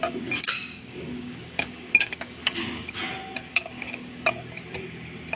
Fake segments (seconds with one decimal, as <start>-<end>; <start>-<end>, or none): 0.0-3.0; 3.5-4.3